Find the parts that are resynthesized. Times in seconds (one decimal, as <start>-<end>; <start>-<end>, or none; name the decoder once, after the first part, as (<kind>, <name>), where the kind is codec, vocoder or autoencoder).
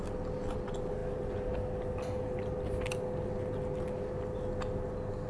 none